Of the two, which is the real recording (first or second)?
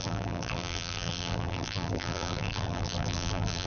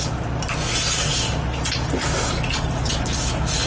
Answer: second